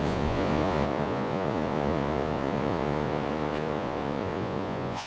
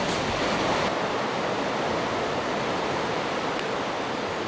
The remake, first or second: first